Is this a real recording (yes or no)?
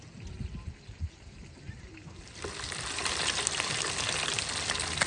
yes